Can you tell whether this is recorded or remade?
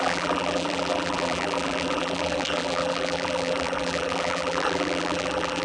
remade